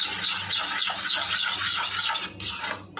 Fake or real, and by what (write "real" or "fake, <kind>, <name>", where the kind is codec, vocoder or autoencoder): real